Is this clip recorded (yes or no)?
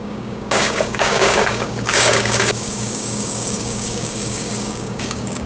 no